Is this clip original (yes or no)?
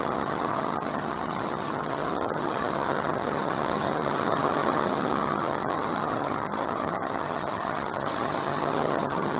no